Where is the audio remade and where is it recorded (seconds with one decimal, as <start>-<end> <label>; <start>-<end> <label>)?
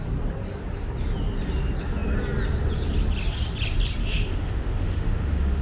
0.0-4.0 recorded; 4.0-5.6 remade